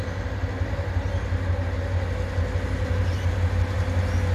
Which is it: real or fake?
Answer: real